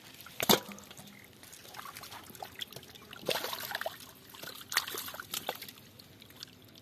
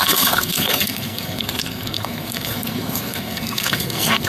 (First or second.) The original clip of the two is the first